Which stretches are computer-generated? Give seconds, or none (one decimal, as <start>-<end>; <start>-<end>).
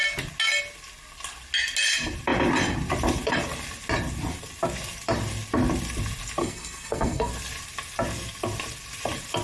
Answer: 6.4-7.3